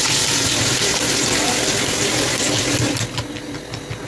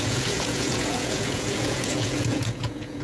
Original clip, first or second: first